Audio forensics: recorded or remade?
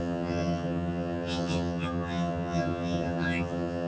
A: remade